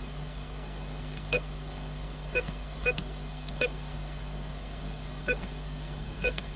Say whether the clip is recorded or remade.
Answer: remade